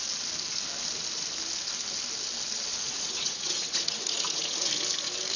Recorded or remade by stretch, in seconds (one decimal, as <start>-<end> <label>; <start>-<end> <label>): 0.0-2.7 recorded; 2.7-4.7 remade; 4.7-5.4 recorded